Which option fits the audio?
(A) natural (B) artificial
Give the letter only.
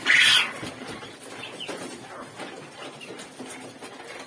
A